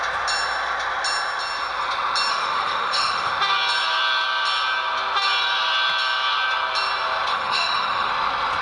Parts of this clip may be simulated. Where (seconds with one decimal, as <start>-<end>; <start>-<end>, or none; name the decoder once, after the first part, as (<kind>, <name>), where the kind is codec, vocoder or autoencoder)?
2.3-3.3 (autoencoder, DAC-VAE); 7.3-8.1